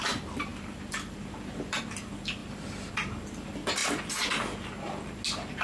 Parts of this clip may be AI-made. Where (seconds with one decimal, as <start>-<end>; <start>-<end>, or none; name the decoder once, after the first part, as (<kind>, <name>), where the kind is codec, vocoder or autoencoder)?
0.5-1.8 (vocoder, BigVGAN v2); 2.4-2.9